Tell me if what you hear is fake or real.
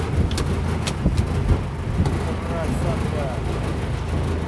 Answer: real